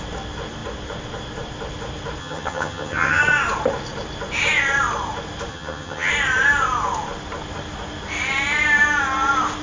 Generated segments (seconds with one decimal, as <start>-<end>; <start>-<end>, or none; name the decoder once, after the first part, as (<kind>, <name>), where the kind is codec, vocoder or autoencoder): 2.2-3.2 (vocoder, HiFi-GAN); 5.5-6.1